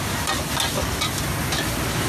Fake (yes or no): no